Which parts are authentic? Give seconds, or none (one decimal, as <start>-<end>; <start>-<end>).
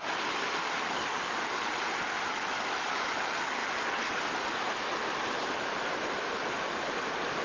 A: 0.0-0.6; 1.6-7.4